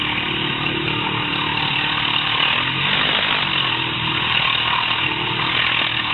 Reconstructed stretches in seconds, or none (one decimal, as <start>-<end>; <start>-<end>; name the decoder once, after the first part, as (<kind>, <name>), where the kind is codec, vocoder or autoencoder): none